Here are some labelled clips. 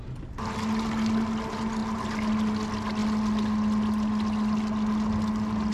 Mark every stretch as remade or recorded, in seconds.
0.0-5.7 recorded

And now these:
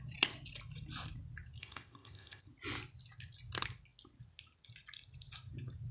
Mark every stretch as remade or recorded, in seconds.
0.0-1.6 recorded; 1.6-2.4 remade; 2.4-5.9 recorded

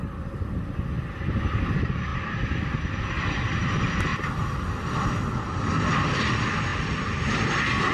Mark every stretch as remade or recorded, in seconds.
0.0-2.1 recorded; 2.1-2.7 remade; 2.7-6.7 recorded; 6.7-7.5 remade; 7.5-7.9 recorded

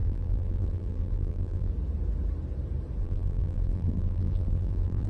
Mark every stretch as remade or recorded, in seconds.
0.0-1.7 remade; 1.7-3.0 recorded; 3.0-5.1 remade

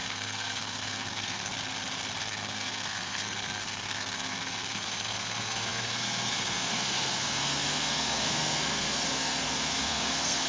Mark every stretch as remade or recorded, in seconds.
0.0-1.5 remade; 1.5-2.2 recorded; 2.2-10.5 remade

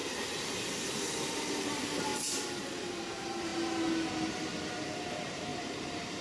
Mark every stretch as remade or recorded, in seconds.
0.0-1.6 recorded; 1.6-3.5 remade; 3.5-5.1 recorded; 5.1-6.2 remade

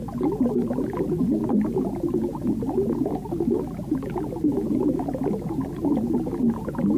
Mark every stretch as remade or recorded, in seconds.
0.0-7.0 recorded